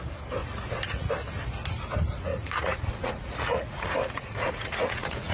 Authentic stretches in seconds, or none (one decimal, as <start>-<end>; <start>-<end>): 0.0-0.4; 1.1-2.3